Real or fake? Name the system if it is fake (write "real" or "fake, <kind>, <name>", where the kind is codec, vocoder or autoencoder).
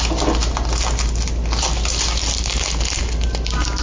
real